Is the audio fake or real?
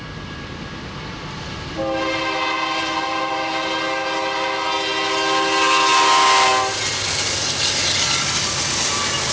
real